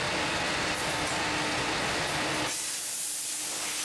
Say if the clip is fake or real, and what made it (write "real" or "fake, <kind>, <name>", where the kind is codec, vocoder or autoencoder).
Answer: real